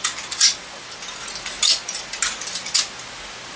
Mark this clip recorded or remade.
recorded